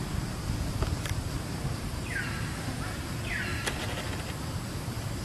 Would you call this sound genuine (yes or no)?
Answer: yes